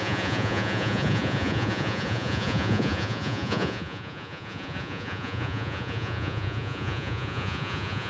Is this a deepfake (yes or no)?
yes